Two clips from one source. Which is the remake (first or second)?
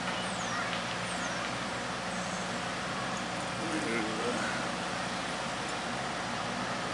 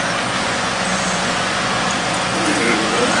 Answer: second